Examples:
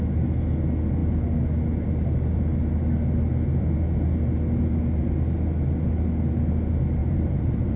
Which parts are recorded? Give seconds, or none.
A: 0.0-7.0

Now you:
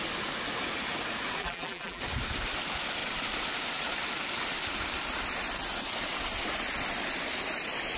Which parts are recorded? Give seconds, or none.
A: 0.0-1.4; 2.0-8.0

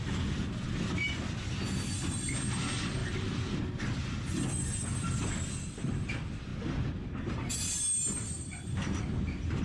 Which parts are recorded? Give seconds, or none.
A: 0.0-3.0; 5.3-9.6

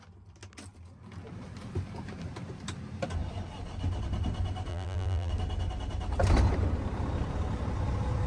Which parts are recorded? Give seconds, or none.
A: 0.0-4.7; 5.3-8.3